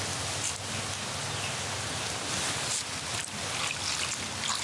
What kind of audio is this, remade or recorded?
recorded